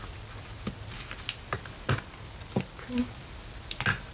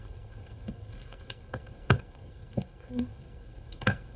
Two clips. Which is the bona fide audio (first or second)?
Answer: first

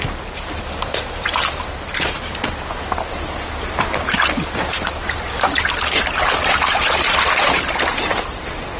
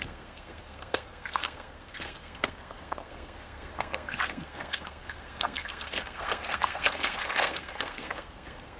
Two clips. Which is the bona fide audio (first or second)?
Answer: first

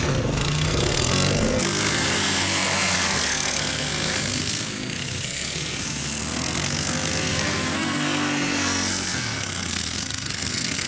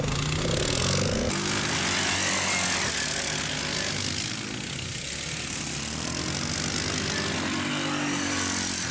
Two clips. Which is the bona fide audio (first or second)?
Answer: second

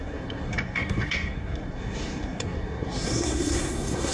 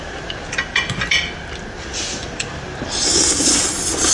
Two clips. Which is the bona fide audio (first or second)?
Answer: second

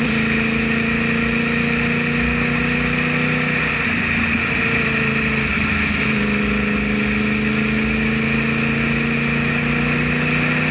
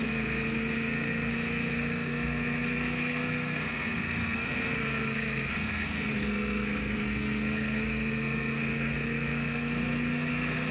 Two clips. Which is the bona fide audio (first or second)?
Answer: first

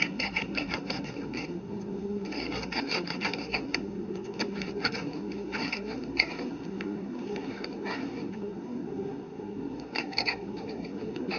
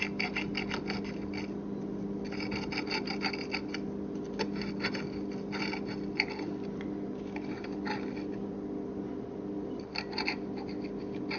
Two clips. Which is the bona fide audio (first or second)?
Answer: second